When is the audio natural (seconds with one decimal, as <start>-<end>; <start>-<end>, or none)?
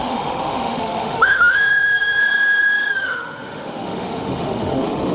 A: 2.2-2.9